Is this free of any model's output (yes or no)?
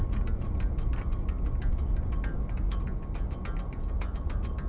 yes